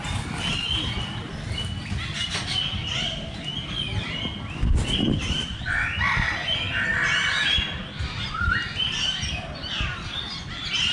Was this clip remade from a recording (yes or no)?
no